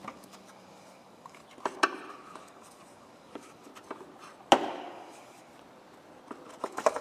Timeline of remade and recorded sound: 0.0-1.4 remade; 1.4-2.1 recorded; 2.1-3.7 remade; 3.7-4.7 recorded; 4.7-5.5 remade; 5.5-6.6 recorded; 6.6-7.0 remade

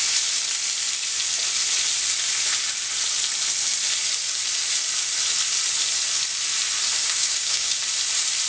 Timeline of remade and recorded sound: 0.0-7.0 recorded; 7.0-7.8 remade; 7.8-8.5 recorded